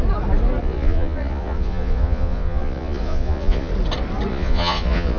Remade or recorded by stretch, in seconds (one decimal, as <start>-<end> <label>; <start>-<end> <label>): 0.0-0.6 recorded; 0.6-3.7 remade; 3.7-4.3 recorded; 4.3-5.2 remade